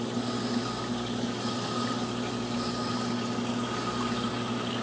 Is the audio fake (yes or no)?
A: no